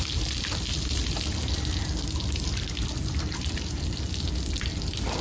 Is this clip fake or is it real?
real